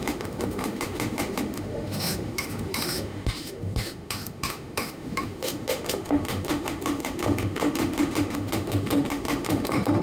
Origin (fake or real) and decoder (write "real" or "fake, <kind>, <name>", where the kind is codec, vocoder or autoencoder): fake, autoencoder, DAC-VAE